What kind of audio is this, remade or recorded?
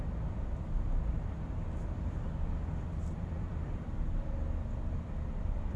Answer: remade